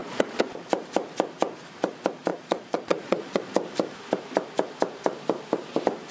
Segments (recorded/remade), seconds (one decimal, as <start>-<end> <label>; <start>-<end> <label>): 0.0-0.5 remade; 0.5-2.3 recorded; 2.3-3.4 remade; 3.4-6.1 recorded